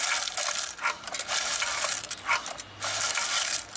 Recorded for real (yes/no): yes